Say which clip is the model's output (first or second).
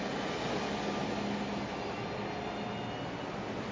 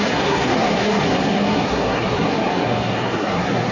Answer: second